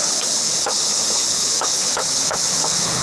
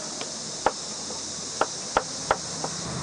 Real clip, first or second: second